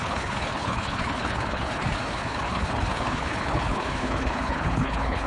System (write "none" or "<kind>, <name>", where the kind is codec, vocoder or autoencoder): codec, HILCodec